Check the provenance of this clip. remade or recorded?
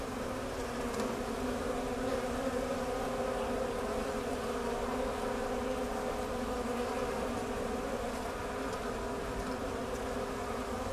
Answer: recorded